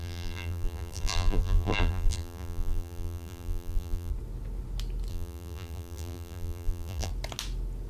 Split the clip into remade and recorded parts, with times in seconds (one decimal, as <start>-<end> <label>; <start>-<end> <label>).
0.0-4.1 remade; 4.1-5.1 recorded; 5.1-7.1 remade; 7.1-7.9 recorded